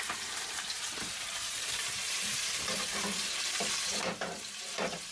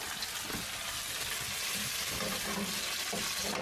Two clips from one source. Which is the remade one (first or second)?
first